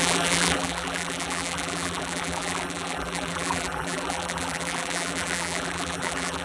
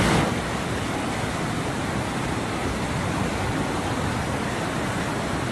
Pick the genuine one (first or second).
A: second